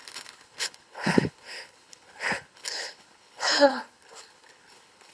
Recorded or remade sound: remade